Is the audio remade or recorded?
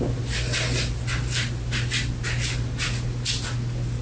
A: recorded